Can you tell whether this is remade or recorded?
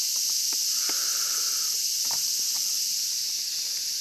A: recorded